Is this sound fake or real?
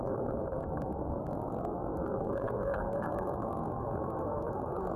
fake